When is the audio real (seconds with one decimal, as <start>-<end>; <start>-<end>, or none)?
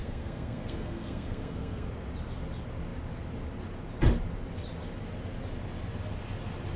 1.9-6.8